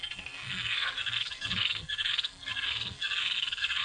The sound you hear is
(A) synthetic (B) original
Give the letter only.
A